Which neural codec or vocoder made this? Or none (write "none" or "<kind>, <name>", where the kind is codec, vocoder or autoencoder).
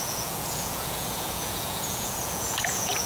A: vocoder, Vocos